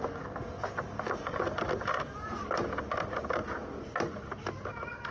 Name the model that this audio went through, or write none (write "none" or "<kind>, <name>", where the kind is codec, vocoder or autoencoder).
none